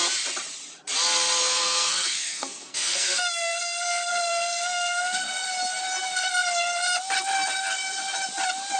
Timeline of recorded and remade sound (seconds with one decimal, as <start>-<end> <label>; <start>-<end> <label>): 0.0-1.4 recorded; 1.4-5.5 remade; 5.5-8.8 recorded